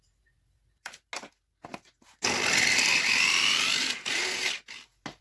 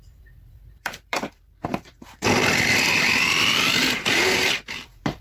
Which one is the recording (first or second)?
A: first